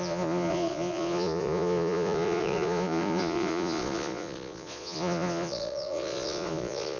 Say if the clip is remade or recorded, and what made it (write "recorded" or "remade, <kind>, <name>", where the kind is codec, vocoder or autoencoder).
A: remade, vocoder, Vocos